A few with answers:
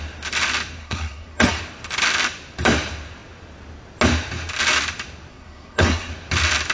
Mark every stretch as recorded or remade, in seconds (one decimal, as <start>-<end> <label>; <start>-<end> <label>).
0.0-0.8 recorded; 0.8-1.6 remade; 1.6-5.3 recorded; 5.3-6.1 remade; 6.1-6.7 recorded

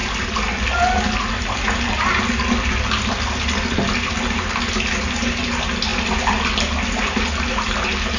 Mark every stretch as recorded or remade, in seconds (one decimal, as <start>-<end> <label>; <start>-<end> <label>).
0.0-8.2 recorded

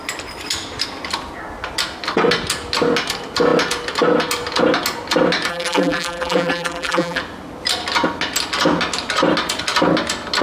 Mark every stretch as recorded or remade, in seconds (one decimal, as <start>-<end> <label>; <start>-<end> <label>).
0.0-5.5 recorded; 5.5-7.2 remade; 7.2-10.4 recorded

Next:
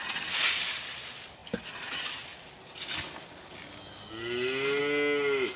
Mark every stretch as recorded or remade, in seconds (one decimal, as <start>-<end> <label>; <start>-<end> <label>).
0.0-5.6 recorded

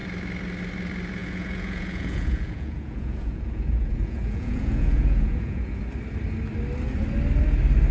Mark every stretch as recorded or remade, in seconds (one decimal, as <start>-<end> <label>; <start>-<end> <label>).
0.0-1.2 recorded; 1.2-5.8 remade; 5.8-7.9 recorded